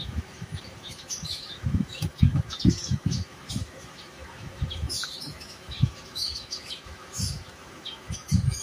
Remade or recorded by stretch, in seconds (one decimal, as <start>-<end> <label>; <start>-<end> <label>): 0.0-8.6 remade